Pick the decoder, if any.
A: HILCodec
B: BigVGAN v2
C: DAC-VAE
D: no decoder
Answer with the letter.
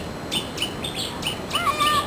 D